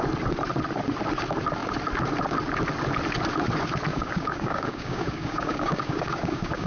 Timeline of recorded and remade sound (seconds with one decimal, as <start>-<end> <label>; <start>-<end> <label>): 0.0-3.9 recorded; 3.9-6.7 remade